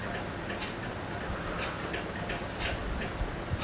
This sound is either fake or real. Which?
real